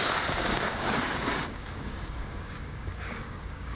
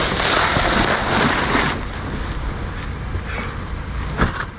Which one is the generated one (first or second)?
first